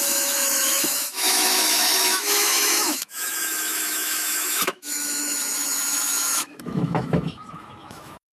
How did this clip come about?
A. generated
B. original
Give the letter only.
A